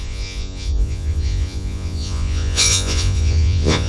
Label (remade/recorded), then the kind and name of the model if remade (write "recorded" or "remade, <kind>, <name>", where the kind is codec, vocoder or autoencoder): remade, vocoder, Vocos